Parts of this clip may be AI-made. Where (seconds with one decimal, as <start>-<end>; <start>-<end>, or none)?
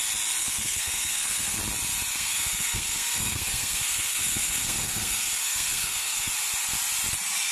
0.4-1.6; 2.1-6.3